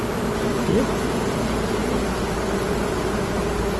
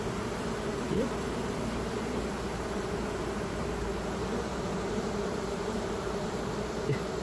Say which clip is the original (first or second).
first